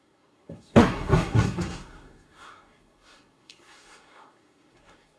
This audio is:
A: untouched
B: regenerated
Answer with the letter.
B